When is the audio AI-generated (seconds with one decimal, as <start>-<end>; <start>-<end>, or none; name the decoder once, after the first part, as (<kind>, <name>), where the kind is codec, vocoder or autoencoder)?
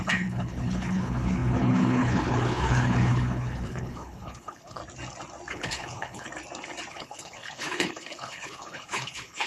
0.0-4.8 (codec, HILCodec); 5.5-6.3; 6.9-9.5